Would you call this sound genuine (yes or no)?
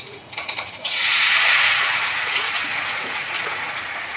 no